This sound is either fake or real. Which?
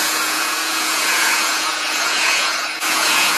fake